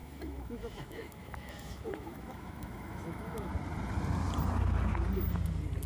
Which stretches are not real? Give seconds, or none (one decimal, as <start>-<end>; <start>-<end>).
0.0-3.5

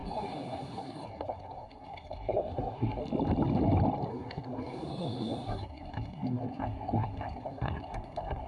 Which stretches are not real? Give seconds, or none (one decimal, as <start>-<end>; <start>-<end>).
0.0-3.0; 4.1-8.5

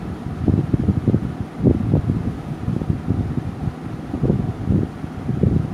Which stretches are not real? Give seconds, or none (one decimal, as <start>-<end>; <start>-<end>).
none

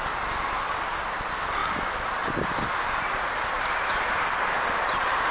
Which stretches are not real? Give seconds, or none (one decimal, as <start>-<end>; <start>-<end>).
none

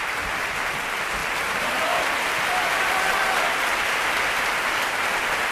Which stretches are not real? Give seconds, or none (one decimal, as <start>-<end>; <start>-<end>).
0.0-5.5

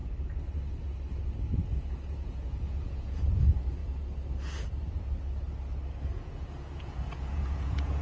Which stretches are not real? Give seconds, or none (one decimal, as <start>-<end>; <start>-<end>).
1.7-3.8; 6.0-8.0